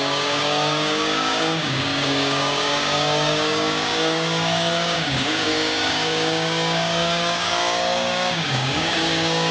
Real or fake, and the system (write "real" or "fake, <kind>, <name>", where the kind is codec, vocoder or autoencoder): fake, codec, DAC